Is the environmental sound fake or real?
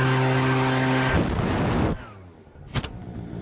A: real